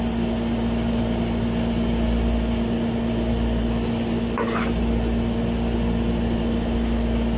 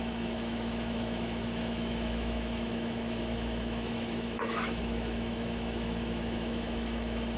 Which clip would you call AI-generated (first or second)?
second